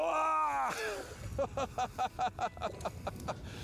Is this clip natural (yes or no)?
yes